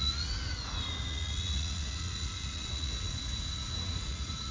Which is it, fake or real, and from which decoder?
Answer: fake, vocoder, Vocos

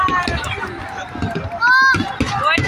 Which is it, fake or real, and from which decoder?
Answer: real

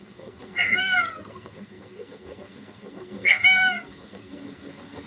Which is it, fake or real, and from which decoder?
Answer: fake, codec, SNAC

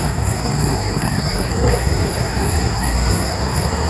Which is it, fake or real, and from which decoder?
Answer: fake, codec, SNAC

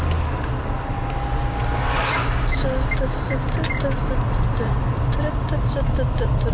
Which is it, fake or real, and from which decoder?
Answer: real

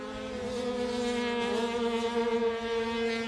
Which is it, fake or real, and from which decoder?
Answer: real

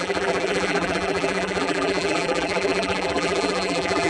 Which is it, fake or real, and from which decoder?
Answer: fake, vocoder, BigVGAN v2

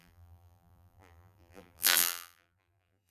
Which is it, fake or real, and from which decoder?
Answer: fake, vocoder, BigVGAN v2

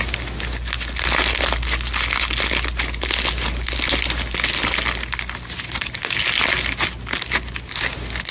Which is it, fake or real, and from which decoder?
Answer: real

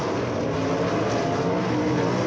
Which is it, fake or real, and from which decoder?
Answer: real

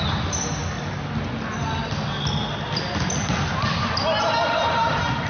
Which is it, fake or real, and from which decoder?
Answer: real